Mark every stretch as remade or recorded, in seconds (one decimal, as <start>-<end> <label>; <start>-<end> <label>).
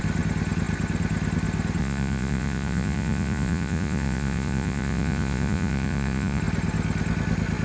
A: 0.0-1.8 recorded; 1.8-6.4 remade; 6.4-7.6 recorded